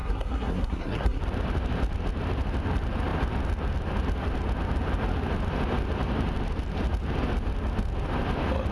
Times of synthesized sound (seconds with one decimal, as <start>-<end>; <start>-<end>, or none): 0.0-1.2